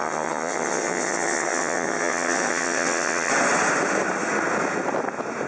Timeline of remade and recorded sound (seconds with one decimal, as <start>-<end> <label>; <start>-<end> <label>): 0.0-3.3 remade; 3.3-5.5 recorded